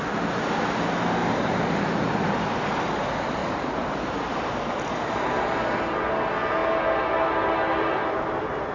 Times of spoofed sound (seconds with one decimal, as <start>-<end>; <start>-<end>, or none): 1.2-2.7; 3.4-5.0